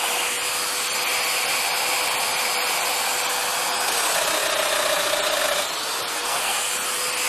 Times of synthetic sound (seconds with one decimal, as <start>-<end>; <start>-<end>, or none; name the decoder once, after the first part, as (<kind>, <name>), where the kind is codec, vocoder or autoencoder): 6.1-6.7 (codec, SNAC)